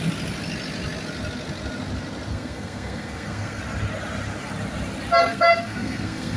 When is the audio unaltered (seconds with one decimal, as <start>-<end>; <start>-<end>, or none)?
0.0-2.3; 3.6-5.2